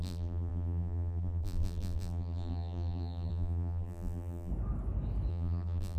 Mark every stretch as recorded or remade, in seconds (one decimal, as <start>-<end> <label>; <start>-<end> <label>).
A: 0.0-4.5 remade; 4.5-5.3 recorded; 5.3-6.0 remade